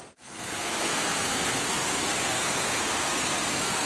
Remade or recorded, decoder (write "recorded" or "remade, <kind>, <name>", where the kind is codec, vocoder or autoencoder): remade, codec, SNAC